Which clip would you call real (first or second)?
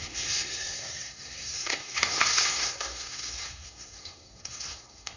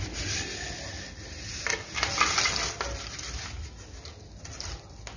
second